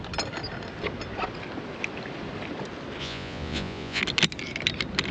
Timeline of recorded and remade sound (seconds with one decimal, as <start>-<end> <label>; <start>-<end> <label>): 0.0-3.0 recorded; 3.0-4.0 remade; 4.0-5.1 recorded